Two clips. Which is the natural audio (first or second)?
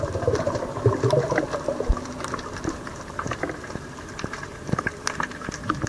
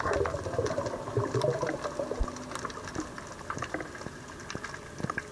second